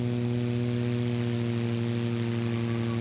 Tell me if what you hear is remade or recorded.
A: recorded